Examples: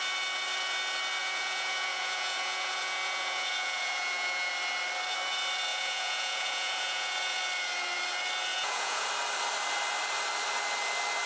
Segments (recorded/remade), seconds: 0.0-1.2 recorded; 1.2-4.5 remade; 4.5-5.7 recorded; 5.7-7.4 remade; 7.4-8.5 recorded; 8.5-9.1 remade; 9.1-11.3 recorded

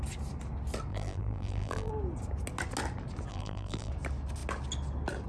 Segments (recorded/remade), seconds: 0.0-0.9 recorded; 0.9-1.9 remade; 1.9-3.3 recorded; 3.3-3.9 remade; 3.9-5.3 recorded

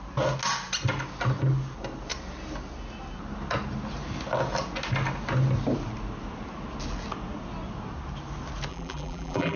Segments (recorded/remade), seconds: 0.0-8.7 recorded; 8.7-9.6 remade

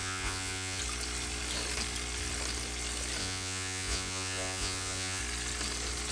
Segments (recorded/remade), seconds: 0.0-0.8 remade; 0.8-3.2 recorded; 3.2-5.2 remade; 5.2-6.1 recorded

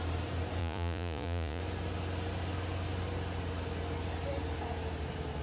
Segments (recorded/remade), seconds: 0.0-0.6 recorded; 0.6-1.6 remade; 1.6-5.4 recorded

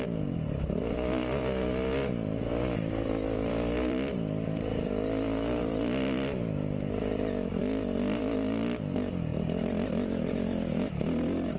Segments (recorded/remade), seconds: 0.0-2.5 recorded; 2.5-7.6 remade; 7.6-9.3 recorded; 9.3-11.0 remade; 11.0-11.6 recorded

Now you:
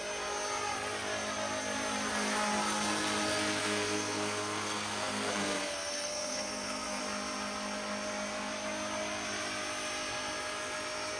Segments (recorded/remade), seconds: 0.0-3.6 recorded; 3.6-7.0 remade; 7.0-11.2 recorded

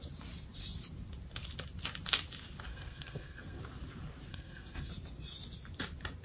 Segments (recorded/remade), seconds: 0.0-2.7 recorded; 2.7-3.6 remade; 3.6-4.3 recorded; 4.3-4.9 remade; 4.9-6.2 recorded